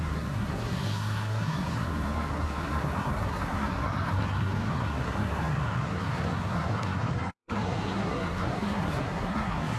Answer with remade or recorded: remade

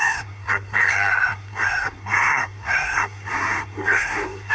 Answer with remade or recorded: remade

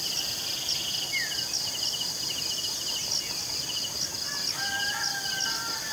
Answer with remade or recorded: recorded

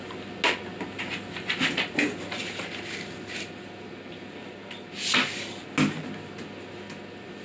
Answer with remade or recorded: recorded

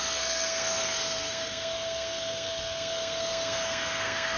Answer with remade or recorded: remade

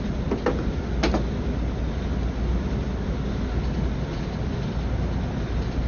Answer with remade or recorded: recorded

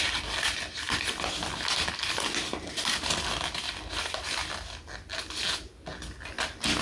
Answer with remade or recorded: recorded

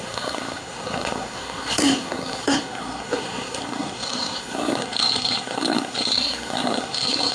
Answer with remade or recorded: remade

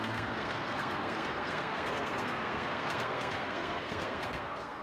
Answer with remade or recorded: remade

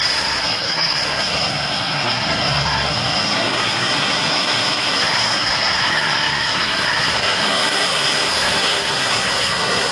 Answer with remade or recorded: remade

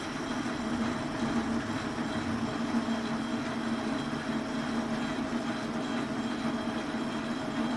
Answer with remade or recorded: recorded